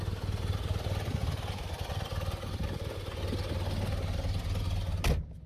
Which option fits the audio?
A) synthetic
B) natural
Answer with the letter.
B